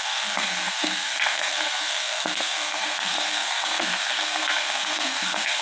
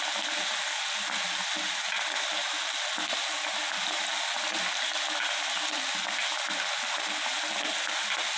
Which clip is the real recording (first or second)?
second